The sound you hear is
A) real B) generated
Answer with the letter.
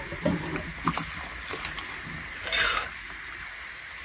B